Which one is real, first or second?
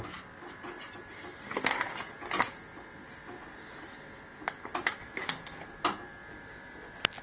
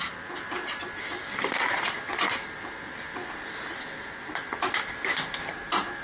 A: first